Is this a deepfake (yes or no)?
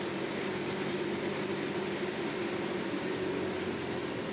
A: no